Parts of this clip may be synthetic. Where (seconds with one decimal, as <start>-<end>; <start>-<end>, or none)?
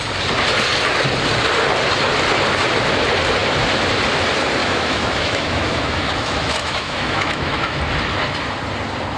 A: 4.6-7.8